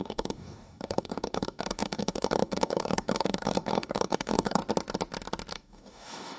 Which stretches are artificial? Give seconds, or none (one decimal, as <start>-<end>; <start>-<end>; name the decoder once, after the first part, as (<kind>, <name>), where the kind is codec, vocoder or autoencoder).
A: 0.0-4.6 (codec, DAC); 5.5-6.4